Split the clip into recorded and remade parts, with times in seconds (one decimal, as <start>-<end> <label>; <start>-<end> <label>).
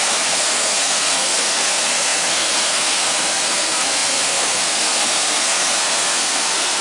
0.0-6.8 remade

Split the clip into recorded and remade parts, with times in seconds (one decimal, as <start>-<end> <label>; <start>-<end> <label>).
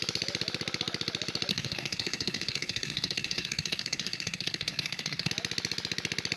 0.0-1.5 recorded; 1.5-5.3 remade; 5.3-6.4 recorded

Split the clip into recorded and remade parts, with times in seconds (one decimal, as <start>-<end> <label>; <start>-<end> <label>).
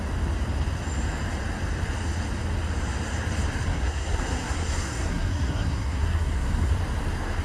0.0-3.7 recorded; 3.7-6.7 remade; 6.7-7.4 recorded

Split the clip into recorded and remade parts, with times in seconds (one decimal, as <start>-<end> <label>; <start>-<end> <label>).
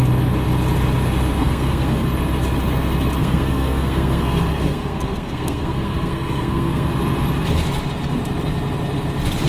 0.0-1.4 recorded; 1.4-2.1 remade; 2.1-3.2 recorded; 3.2-6.9 remade; 6.9-9.5 recorded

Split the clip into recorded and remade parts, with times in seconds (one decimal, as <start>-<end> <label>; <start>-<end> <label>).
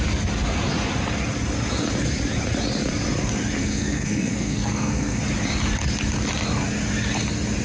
0.0-3.6 recorded; 3.6-5.2 remade; 5.2-7.6 recorded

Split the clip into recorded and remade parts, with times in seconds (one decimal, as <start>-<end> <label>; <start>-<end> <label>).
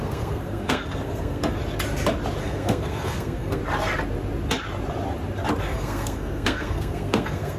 0.0-1.6 remade; 1.6-2.4 recorded; 2.4-3.6 remade; 3.6-5.6 recorded; 5.6-7.6 remade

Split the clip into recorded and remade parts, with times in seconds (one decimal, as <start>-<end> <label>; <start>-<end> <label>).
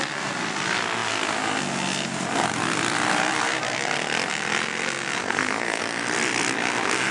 0.0-5.2 recorded; 5.2-5.8 remade; 5.8-7.1 recorded